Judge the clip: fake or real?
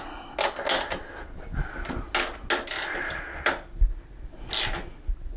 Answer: real